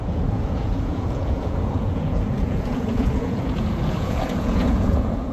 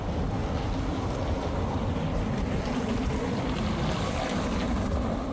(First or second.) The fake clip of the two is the first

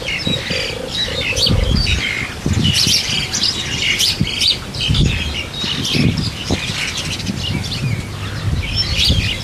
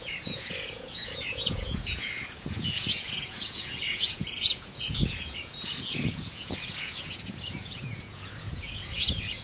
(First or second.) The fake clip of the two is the second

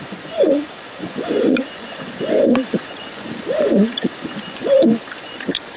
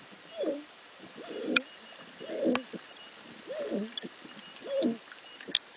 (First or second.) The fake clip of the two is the first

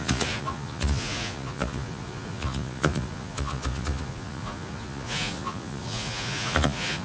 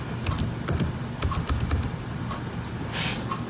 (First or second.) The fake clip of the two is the first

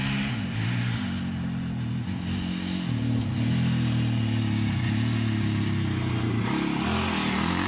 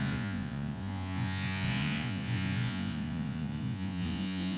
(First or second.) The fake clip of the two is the second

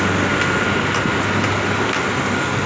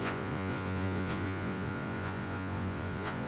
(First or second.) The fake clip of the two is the second